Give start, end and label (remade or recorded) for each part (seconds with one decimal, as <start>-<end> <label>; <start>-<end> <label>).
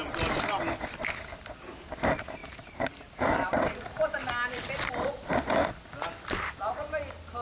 0.0-7.4 recorded